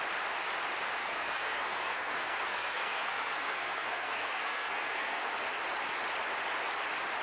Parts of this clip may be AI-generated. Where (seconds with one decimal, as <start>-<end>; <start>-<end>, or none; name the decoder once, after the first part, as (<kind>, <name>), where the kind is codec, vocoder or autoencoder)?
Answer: 1.0-5.3 (codec, SNAC)